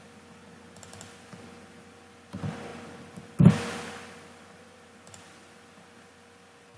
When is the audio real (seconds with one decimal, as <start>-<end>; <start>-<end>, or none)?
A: 0.0-6.8